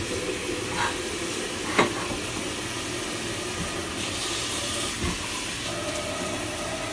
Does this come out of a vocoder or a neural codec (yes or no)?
no